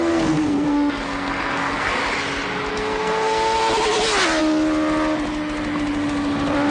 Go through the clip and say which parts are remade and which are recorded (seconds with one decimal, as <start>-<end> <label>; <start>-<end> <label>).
0.0-2.0 remade; 2.0-2.7 recorded; 2.7-3.6 remade; 3.6-6.7 recorded